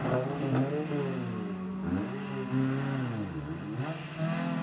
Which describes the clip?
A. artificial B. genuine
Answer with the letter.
B